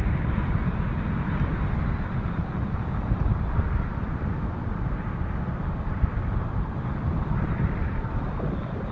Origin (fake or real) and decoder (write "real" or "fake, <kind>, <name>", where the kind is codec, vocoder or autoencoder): fake, vocoder, BigVGAN v2